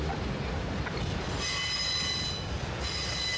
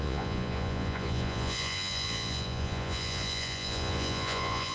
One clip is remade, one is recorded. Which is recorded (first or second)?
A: first